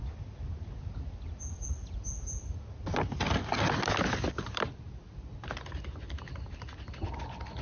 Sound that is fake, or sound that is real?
real